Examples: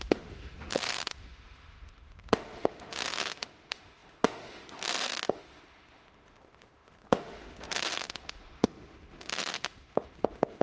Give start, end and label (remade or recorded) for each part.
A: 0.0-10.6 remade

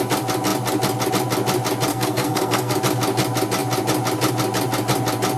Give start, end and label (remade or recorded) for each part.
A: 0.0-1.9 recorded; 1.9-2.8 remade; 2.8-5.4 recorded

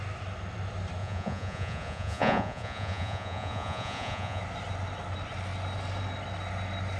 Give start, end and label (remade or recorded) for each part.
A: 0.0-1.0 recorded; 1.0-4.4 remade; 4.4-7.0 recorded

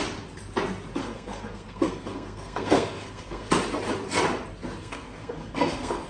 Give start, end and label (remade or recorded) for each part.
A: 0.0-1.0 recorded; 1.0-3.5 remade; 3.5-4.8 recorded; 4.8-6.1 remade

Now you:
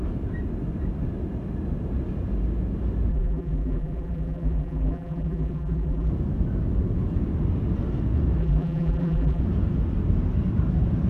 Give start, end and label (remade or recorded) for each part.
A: 0.0-3.1 recorded; 3.1-6.1 remade; 6.1-8.4 recorded; 8.4-9.4 remade; 9.4-11.1 recorded

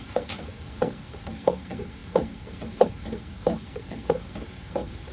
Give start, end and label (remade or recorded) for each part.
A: 0.0-5.1 remade